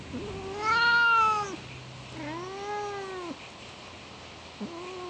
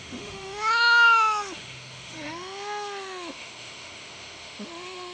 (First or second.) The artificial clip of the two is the second